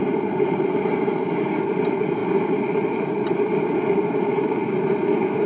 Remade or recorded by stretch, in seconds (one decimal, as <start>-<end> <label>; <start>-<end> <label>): 0.0-1.1 remade; 1.1-1.7 recorded; 1.7-2.2 remade; 2.2-2.9 recorded; 2.9-5.5 remade